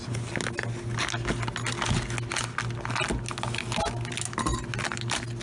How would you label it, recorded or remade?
recorded